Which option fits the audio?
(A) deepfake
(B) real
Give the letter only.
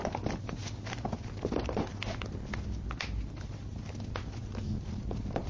B